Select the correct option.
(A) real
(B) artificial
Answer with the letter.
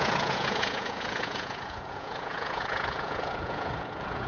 B